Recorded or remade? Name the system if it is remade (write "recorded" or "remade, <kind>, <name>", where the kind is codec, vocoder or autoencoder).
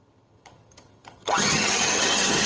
remade, vocoder, HiFi-GAN